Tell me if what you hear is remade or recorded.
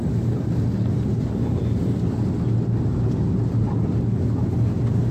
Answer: recorded